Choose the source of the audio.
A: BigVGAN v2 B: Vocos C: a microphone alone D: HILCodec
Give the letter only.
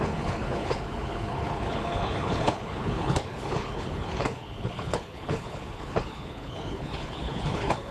D